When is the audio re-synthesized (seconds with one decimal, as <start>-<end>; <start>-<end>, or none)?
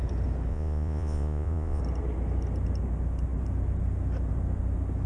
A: 0.5-1.8